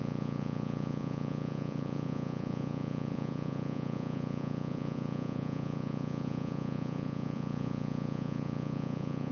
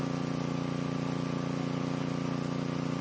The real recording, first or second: second